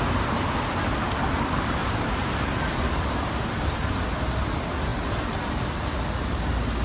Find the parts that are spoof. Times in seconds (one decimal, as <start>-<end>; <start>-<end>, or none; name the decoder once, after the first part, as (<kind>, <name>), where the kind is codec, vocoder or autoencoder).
1.8-2.5 (vocoder, BigVGAN v2)

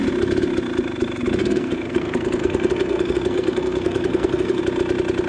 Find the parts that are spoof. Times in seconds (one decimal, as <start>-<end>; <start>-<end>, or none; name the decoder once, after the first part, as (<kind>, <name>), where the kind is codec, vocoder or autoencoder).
1.4-4.6 (codec, SNAC)

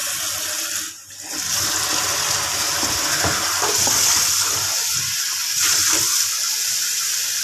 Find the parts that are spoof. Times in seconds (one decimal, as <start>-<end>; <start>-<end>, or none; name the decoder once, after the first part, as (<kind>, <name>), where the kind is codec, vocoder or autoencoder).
none

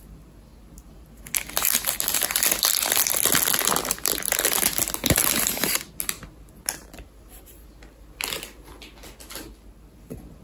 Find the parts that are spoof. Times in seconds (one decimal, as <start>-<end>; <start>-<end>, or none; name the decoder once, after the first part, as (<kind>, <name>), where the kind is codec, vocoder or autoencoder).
none

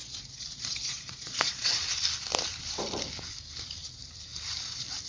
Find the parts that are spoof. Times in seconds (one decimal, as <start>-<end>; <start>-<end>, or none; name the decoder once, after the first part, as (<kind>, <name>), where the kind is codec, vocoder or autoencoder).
0.0-1.8 (vocoder, Vocos)

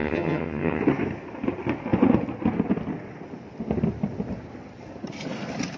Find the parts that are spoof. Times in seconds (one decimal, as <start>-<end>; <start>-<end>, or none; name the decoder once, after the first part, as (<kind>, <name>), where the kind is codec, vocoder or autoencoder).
0.0-0.8 (vocoder, HiFi-GAN)

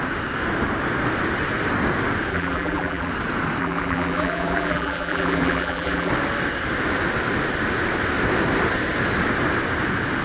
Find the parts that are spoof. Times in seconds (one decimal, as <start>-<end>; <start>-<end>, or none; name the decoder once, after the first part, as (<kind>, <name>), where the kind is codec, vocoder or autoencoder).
2.3-3.1 (vocoder, BigVGAN v2); 3.6-6.1